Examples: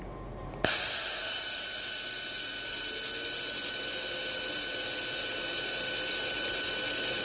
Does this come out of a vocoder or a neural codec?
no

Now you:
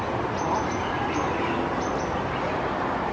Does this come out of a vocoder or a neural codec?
no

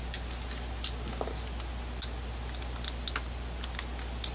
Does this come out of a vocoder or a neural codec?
no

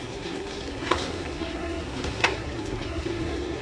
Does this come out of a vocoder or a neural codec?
yes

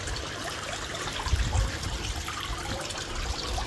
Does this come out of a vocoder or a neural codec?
no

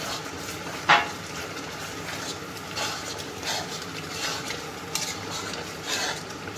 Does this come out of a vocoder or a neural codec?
no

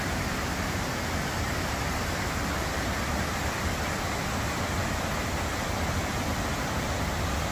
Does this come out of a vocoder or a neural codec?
no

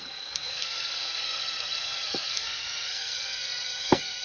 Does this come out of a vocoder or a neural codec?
yes